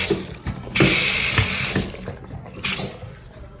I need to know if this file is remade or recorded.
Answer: recorded